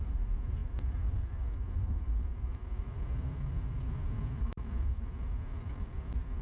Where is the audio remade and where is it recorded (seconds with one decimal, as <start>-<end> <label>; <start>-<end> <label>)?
0.0-6.4 recorded